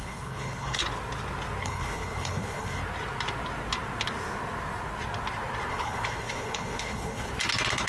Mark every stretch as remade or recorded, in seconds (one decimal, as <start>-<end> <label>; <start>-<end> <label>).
0.0-0.8 remade; 0.8-1.6 recorded; 1.6-2.8 remade; 2.8-5.7 recorded; 5.7-7.3 remade; 7.3-7.9 recorded